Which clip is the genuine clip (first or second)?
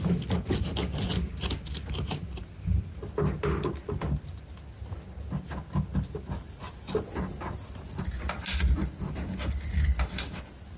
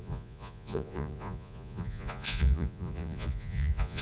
first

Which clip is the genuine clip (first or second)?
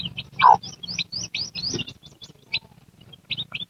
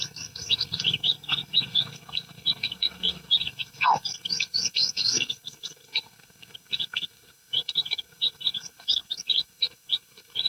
first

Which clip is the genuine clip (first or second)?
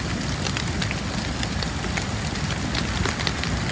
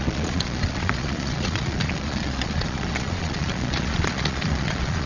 first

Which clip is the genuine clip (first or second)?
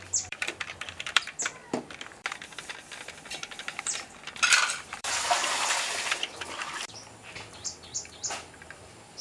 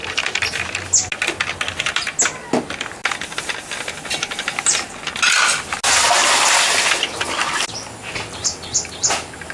second